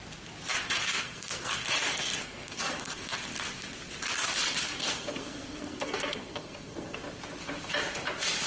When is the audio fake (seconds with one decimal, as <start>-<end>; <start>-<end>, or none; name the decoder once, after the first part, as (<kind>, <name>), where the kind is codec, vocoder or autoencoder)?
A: 0.9-1.6 (codec, SNAC); 2.2-3.2; 4.8-7.0

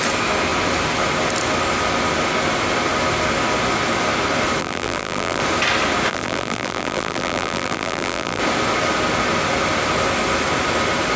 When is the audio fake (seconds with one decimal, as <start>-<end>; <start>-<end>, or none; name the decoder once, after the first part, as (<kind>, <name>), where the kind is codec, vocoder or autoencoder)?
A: 4.6-5.4 (vocoder, BigVGAN v2); 6.1-8.4

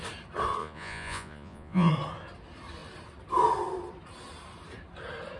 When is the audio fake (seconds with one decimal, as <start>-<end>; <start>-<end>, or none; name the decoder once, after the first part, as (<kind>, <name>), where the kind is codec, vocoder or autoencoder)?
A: 0.6-1.9 (vocoder, Vocos)